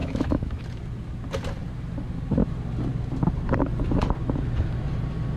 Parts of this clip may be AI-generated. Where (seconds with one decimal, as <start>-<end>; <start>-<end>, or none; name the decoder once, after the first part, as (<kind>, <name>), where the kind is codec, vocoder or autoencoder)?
0.0-0.6 (autoencoder, DAC-VAE)